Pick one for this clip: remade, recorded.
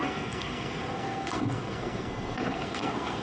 remade